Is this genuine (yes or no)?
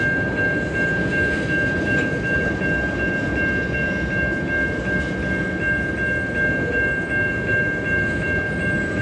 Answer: yes